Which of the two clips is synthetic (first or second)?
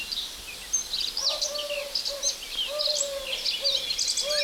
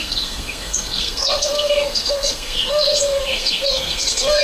second